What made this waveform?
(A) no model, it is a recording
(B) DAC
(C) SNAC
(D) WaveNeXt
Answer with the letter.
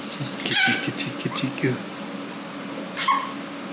A